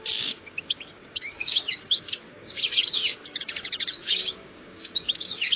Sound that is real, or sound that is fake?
fake